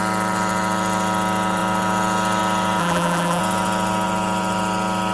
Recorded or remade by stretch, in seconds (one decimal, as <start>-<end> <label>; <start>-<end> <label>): 0.0-2.8 recorded; 2.8-3.4 remade; 3.4-5.1 recorded